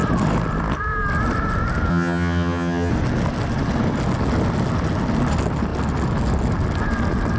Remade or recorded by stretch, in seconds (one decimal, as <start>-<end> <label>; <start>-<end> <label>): 0.0-1.9 recorded; 1.9-2.9 remade; 2.9-7.4 recorded